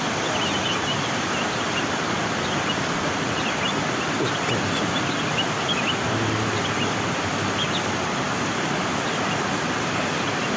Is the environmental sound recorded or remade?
recorded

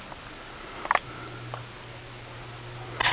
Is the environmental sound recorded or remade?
recorded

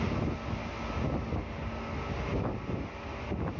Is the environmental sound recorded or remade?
recorded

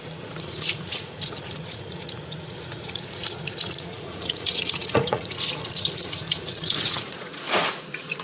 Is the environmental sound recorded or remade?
remade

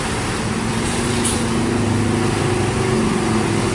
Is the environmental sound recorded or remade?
recorded